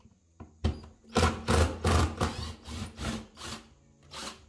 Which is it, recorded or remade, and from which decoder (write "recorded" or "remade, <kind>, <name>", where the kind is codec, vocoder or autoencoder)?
recorded